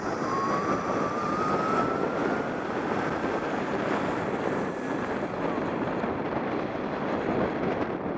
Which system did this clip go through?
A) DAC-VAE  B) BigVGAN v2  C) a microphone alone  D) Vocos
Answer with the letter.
C